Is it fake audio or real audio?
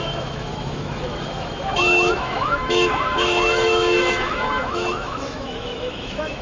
fake